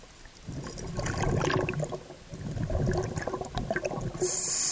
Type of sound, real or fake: real